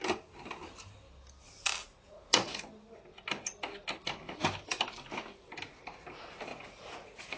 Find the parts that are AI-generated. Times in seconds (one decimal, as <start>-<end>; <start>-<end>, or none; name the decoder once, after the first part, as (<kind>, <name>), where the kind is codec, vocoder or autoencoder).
1.8-2.6 (vocoder, Vocos); 6.5-7.4